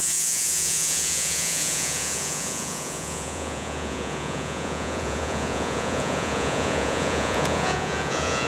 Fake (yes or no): yes